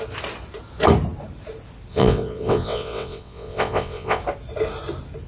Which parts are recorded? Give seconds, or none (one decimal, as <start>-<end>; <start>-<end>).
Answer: 0.0-1.9; 4.2-5.3